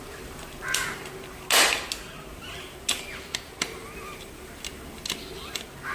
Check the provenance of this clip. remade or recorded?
recorded